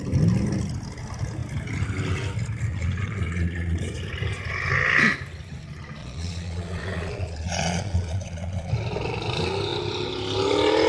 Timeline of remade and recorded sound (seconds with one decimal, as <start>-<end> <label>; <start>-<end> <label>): 0.0-2.7 recorded; 2.7-3.8 remade; 3.8-6.0 recorded; 6.0-8.7 remade; 8.7-10.9 recorded